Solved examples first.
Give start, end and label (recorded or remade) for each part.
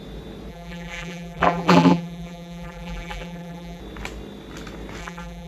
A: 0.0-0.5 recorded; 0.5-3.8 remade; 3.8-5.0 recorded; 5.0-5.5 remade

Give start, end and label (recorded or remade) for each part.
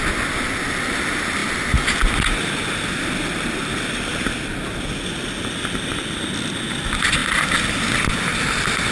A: 0.0-8.9 recorded